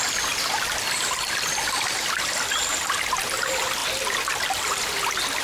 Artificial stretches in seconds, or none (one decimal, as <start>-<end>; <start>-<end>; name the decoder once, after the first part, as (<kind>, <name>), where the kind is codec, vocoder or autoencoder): none